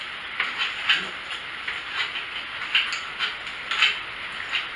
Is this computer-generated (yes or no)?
no